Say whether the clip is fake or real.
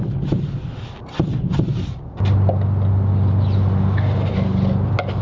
real